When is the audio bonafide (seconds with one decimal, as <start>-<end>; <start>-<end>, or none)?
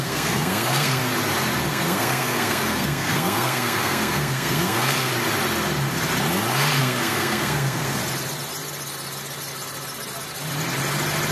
1.0-1.7; 5.1-6.8; 8.0-11.3